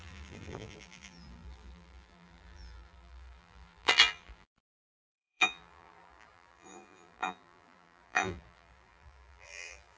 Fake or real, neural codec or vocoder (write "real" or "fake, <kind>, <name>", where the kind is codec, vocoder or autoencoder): fake, vocoder, BigVGAN v2